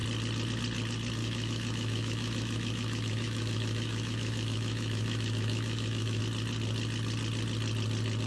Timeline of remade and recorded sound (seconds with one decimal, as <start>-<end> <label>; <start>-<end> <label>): 0.0-1.2 recorded; 1.2-6.2 remade; 6.2-8.3 recorded